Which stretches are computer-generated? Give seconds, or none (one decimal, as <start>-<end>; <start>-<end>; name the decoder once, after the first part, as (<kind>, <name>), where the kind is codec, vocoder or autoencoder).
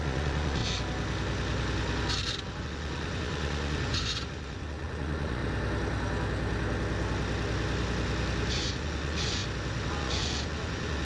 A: 0.0-0.6 (vocoder, Vocos); 2.6-5.4; 8.5-9.4; 9.9-11.0